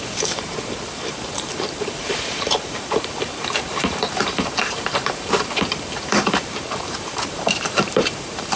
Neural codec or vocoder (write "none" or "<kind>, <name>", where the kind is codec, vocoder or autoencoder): vocoder, BigVGAN v2